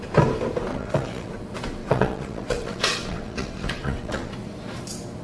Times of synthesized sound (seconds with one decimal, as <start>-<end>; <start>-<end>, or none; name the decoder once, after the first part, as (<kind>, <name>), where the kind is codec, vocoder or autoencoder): 0.7-1.3 (vocoder, WaveNeXt); 1.8-4.3